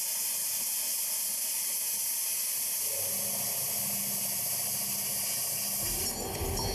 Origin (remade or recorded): recorded